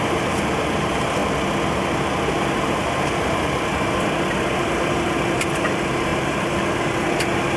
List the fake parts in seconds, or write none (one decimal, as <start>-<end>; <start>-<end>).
0.0-1.2; 2.6-3.7; 4.4-7.6